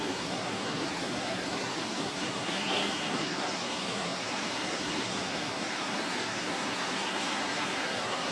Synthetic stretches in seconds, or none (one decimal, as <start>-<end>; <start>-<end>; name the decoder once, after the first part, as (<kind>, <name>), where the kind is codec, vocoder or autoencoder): 0.0-8.3 (codec, SNAC)